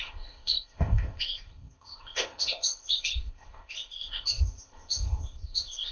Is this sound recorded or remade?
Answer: remade